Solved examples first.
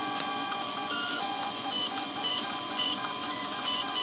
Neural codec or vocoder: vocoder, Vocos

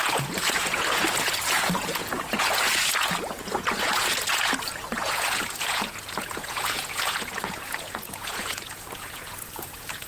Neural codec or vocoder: vocoder, Vocos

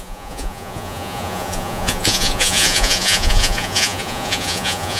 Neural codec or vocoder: vocoder, Vocos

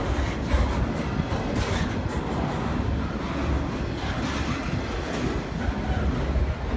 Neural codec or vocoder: none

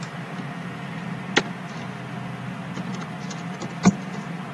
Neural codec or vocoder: none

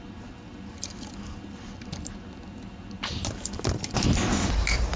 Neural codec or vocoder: none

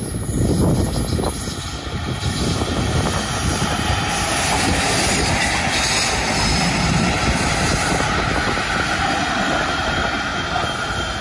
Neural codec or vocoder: none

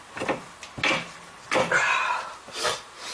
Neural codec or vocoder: none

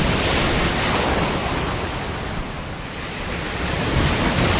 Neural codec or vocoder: none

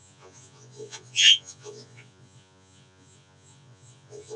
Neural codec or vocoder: vocoder, Vocos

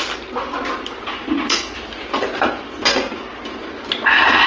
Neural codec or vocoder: none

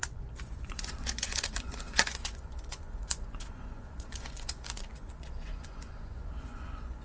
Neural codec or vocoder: vocoder, Vocos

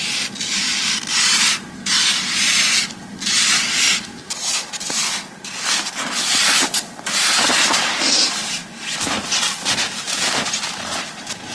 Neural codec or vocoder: none